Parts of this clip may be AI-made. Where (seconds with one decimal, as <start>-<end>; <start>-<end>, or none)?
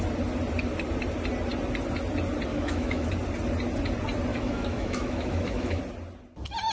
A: 2.5-3.1; 4.3-5.8